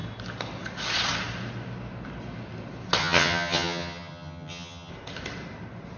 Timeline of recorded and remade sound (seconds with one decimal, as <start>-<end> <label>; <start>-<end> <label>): 0.0-3.0 recorded; 3.0-4.9 remade; 4.9-6.0 recorded